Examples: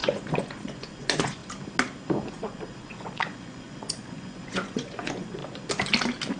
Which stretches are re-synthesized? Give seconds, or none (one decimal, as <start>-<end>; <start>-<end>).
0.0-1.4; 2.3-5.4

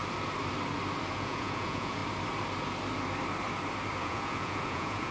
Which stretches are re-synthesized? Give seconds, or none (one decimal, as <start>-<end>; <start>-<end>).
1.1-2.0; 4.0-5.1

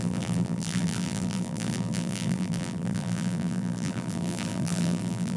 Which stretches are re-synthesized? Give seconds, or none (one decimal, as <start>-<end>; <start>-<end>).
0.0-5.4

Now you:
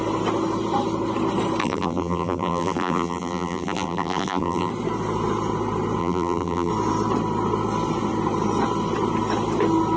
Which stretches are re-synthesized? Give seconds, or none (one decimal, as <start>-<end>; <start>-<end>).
1.6-4.7; 6.0-6.7

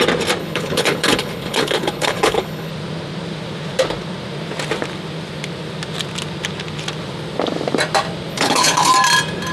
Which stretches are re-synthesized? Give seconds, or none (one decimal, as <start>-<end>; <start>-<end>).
0.4-2.7; 8.3-8.9

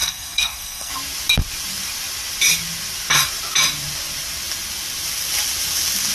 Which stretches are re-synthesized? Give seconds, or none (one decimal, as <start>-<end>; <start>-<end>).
0.0-0.9

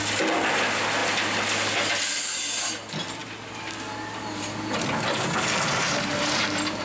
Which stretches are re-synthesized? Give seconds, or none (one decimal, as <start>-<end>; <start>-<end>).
none

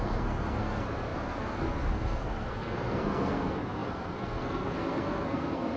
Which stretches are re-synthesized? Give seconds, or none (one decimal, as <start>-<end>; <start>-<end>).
0.0-5.8